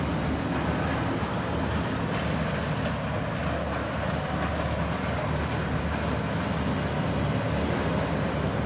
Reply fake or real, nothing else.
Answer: real